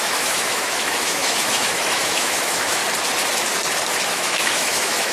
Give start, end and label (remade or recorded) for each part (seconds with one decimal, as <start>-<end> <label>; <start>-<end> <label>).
0.0-2.8 remade; 2.8-4.1 recorded; 4.1-5.1 remade